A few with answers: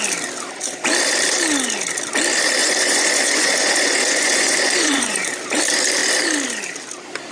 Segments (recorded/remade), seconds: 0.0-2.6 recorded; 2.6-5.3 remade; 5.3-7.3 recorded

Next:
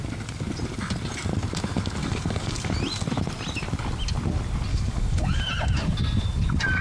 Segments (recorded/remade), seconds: 0.0-2.0 recorded; 2.0-2.7 remade; 2.7-4.7 recorded; 4.7-5.4 remade; 5.4-6.8 recorded

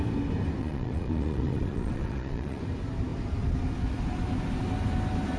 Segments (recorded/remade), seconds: 0.0-0.6 recorded; 0.6-2.6 remade; 2.6-5.4 recorded

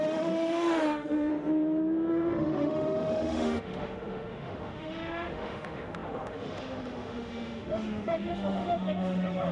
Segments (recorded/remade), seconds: 0.0-1.3 remade; 1.3-2.1 recorded; 2.1-9.5 remade

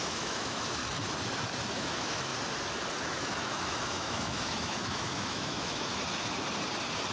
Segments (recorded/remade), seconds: 0.0-0.8 remade; 0.8-1.7 recorded; 1.7-2.3 remade; 2.3-3.0 recorded; 3.0-5.9 remade; 5.9-7.1 recorded

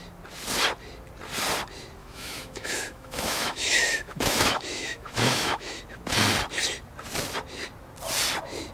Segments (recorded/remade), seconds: 0.0-2.0 recorded; 2.0-5.8 remade; 5.8-8.7 recorded

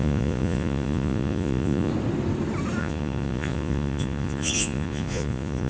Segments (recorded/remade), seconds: 0.0-1.9 remade; 1.9-2.8 recorded; 2.8-5.7 remade

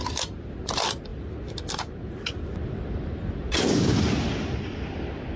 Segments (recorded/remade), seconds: 0.0-5.4 recorded